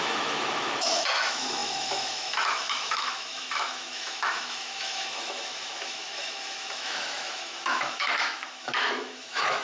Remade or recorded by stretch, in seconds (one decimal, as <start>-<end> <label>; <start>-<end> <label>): 0.0-9.6 remade